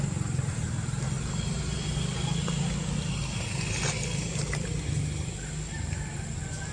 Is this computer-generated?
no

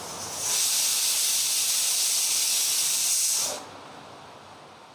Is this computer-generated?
no